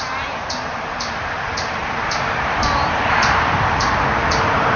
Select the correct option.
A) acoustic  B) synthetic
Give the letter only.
B